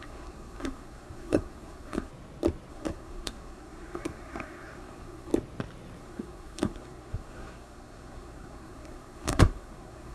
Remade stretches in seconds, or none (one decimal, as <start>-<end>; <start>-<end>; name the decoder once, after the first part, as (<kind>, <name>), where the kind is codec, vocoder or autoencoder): 0.0-2.1 (codec, SNAC); 2.7-5.3; 6.0-10.1